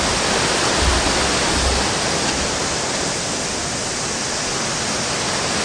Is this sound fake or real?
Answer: real